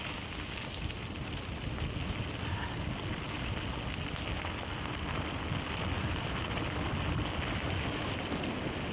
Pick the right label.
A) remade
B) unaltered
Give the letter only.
B